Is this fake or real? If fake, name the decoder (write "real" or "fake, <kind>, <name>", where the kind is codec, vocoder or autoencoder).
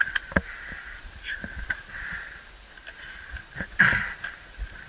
fake, vocoder, BigVGAN v2